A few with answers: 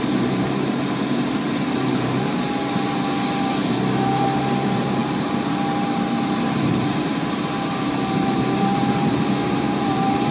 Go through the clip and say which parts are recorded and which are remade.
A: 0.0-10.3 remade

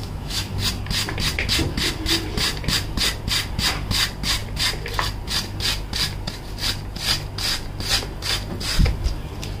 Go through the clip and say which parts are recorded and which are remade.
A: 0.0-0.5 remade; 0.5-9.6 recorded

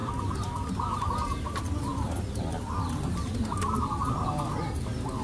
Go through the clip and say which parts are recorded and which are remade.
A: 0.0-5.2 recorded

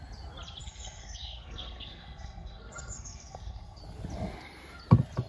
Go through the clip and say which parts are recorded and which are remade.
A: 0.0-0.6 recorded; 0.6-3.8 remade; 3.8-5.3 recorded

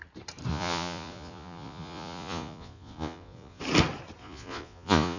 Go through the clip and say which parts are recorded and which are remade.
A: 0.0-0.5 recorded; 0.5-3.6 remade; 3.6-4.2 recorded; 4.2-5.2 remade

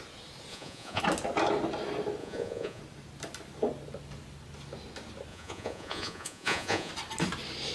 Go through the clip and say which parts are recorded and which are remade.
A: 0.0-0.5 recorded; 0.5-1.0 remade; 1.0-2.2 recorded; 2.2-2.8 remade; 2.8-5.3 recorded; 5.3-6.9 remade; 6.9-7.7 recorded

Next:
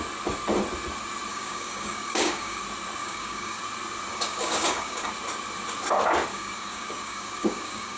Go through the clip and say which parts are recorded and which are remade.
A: 0.0-1.3 recorded; 1.3-2.6 remade; 2.6-3.0 recorded; 3.0-3.6 remade; 3.6-4.1 recorded; 4.1-5.1 remade; 5.1-6.3 recorded; 6.3-8.0 remade

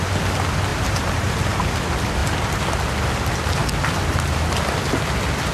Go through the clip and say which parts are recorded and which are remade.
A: 0.0-0.7 recorded; 0.7-1.3 remade; 1.3-3.6 recorded; 3.6-4.5 remade; 4.5-5.5 recorded